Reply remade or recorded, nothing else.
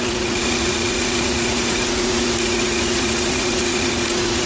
remade